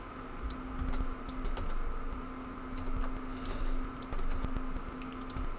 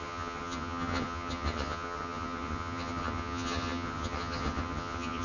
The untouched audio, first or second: first